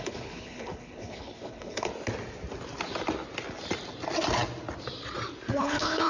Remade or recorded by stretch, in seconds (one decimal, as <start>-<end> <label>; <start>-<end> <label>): 0.0-1.9 remade; 1.9-5.6 recorded; 5.6-6.1 remade